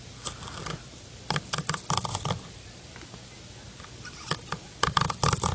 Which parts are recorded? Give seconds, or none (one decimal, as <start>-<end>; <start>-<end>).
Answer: 0.0-5.5